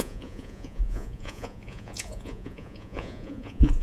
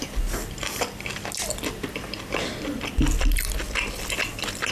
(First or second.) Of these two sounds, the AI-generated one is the first